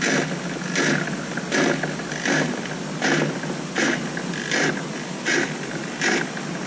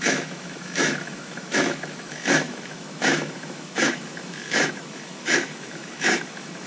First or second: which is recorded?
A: first